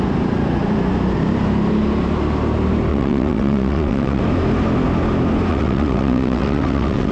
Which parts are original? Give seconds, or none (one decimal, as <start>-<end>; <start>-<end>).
0.0-2.9; 4.2-5.5